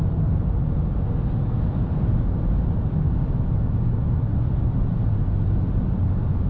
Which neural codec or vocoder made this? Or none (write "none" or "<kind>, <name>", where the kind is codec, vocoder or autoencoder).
none